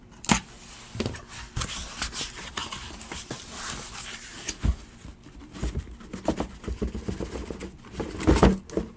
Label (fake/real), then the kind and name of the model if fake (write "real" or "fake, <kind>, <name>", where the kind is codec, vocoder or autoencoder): real